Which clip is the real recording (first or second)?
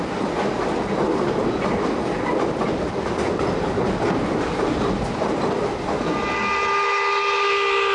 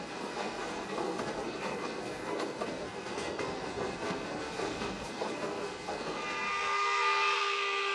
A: first